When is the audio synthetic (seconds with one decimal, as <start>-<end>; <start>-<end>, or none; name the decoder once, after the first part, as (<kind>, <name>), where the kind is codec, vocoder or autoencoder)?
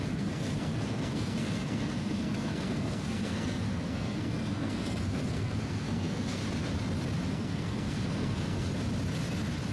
0.0-6.4 (codec, SNAC); 7.3-8.7